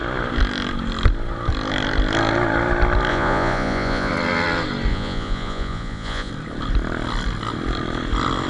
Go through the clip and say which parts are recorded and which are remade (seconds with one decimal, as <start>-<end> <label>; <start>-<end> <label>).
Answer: 0.0-3.1 recorded; 3.1-4.1 remade; 4.1-4.9 recorded; 4.9-6.3 remade; 6.3-8.5 recorded